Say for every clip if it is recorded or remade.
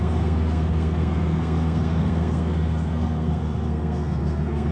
remade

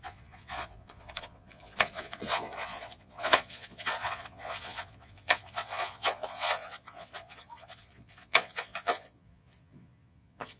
remade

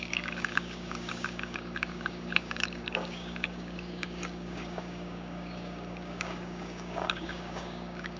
remade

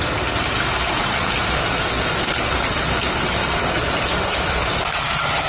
recorded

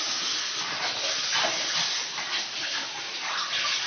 recorded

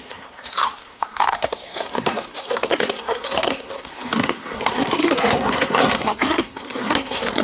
remade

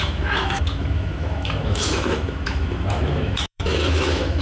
remade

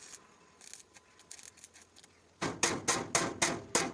recorded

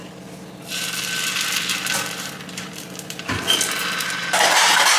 recorded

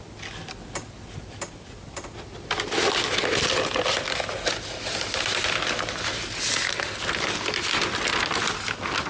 recorded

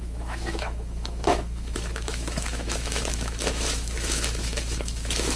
remade